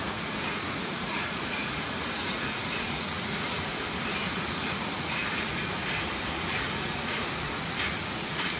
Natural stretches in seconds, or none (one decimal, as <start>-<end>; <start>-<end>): 3.7-4.3; 5.6-6.2